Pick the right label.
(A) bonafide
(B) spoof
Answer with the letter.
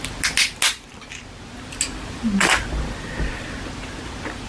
A